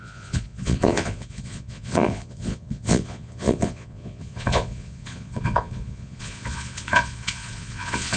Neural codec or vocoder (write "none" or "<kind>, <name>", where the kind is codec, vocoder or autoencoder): vocoder, Vocos